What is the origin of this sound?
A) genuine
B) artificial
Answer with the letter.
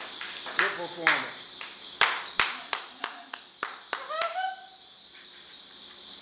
A